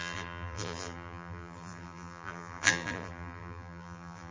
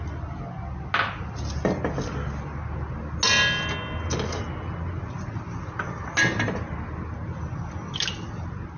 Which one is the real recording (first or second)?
second